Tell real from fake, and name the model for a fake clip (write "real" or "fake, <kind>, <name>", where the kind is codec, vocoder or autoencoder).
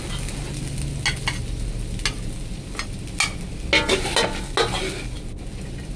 real